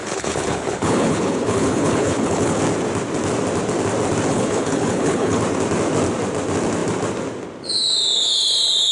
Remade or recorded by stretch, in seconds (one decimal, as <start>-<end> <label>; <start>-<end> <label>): 0.0-2.6 remade; 2.6-4.3 recorded; 4.3-5.4 remade; 5.4-8.9 recorded